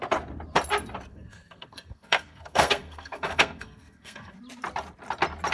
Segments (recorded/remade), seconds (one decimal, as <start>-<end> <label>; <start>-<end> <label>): 0.0-1.1 recorded; 1.1-4.4 remade; 4.4-5.5 recorded